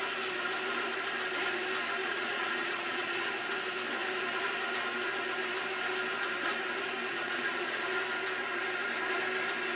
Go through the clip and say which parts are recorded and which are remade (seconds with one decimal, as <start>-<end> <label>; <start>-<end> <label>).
0.0-2.0 recorded; 2.0-3.3 remade; 3.3-7.1 recorded; 7.1-7.8 remade; 7.8-9.8 recorded